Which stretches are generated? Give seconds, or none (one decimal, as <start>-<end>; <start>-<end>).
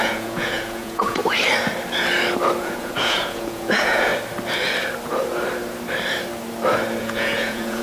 0.0-1.2; 2.6-4.1; 7.0-7.8